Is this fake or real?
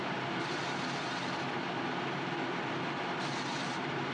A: real